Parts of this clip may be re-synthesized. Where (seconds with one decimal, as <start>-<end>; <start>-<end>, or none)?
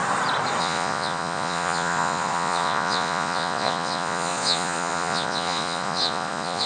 0.6-6.7